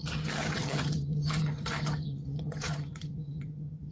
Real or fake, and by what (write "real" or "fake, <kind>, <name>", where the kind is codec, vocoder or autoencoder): fake, vocoder, HiFi-GAN